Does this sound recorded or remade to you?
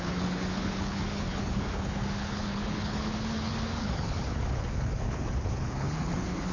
remade